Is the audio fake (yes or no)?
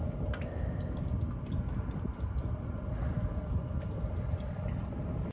no